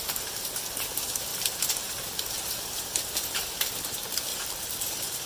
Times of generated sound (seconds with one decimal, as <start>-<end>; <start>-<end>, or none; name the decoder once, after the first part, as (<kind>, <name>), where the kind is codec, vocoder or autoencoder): 1.3-3.6 (vocoder, BigVGAN v2); 4.3-5.3